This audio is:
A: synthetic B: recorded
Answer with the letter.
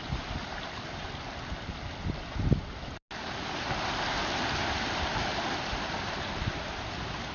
B